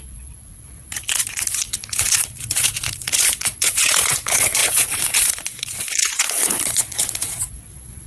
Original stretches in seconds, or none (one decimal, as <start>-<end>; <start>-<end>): none